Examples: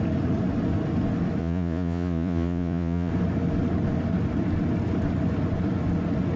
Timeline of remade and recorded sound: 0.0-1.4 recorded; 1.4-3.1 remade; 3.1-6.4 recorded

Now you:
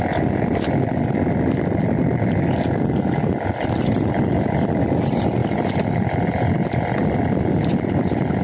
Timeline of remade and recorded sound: 0.0-8.4 recorded

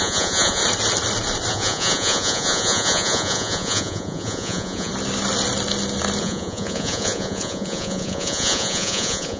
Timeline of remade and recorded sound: 0.0-0.6 remade; 0.6-1.5 recorded; 1.5-4.9 remade; 4.9-6.2 recorded; 6.2-9.4 remade

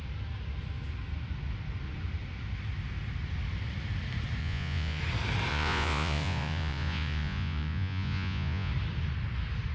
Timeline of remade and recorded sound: 0.0-4.4 recorded; 4.4-5.0 remade; 5.0-5.5 recorded; 5.5-8.7 remade; 8.7-9.7 recorded

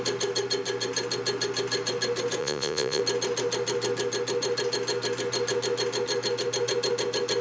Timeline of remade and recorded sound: 0.0-2.4 recorded; 2.4-3.0 remade; 3.0-7.4 recorded

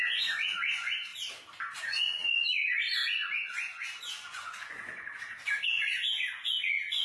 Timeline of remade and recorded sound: 0.0-1.1 remade; 1.1-1.8 recorded; 1.8-7.0 remade